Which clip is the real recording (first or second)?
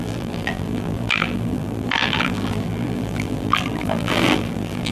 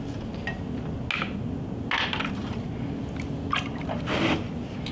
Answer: second